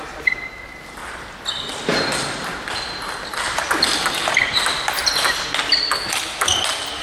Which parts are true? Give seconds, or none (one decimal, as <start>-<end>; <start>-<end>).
0.0-7.0